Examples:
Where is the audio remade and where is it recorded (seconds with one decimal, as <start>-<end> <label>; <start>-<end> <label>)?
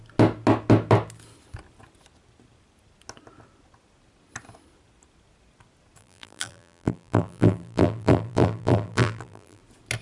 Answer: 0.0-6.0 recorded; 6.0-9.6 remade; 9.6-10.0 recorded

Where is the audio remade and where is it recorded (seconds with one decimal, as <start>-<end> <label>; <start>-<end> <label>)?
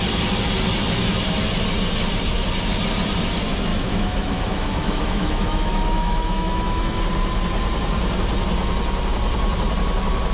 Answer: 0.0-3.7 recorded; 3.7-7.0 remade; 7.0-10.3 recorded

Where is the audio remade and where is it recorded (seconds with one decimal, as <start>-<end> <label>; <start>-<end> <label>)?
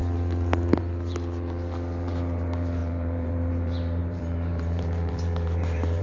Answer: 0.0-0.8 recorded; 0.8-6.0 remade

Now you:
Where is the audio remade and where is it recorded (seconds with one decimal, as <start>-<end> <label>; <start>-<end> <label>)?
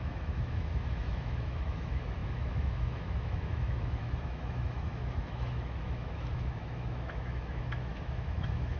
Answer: 0.0-8.8 remade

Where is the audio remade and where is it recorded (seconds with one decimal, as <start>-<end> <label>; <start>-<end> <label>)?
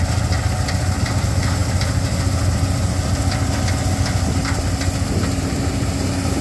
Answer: 0.0-6.4 recorded